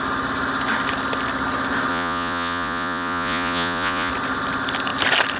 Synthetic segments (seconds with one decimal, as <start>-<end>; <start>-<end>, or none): 1.9-4.1